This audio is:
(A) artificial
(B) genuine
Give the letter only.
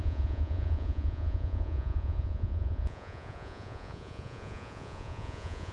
A